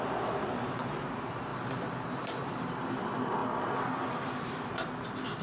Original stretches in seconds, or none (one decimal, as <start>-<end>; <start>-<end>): 1.5-2.0; 3.4-4.4